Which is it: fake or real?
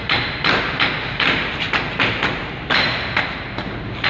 fake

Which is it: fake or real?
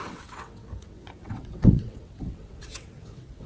fake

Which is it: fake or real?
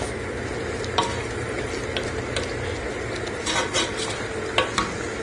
real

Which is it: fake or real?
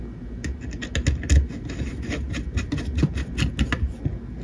real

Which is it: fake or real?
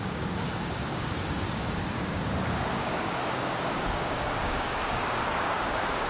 fake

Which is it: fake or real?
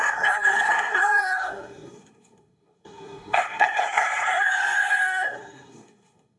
fake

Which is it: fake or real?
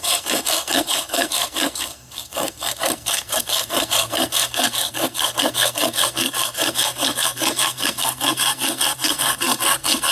fake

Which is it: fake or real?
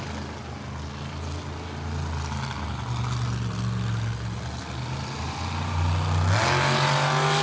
real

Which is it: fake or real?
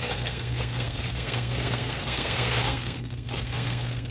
fake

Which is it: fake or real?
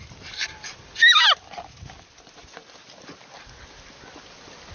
real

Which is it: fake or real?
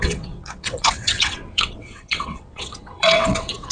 fake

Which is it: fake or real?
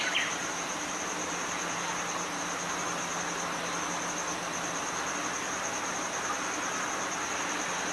real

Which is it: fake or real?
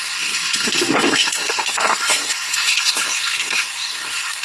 fake